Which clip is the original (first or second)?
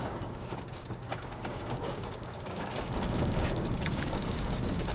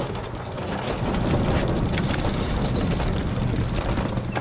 second